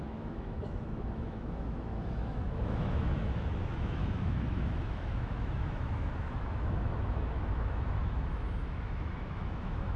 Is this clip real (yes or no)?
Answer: no